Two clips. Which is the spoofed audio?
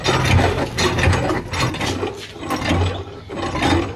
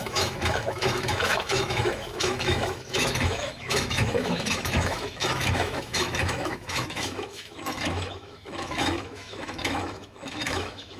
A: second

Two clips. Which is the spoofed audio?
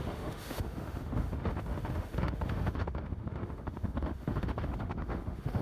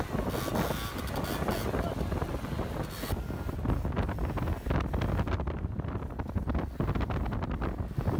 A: first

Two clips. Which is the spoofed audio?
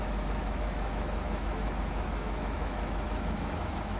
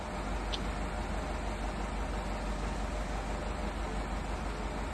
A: first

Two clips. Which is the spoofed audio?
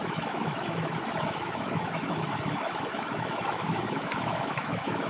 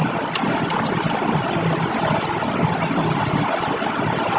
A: first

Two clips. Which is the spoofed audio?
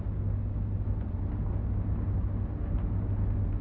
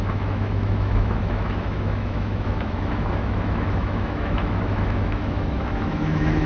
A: second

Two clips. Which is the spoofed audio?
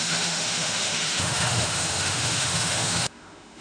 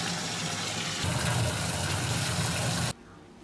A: first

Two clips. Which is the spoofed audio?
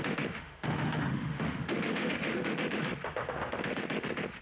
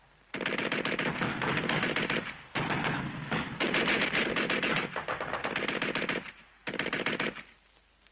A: first